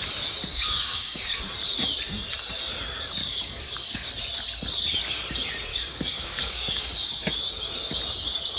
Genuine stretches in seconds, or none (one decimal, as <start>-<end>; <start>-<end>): 0.0-0.5; 1.4-3.2; 4.1-5.7; 7.3-8.6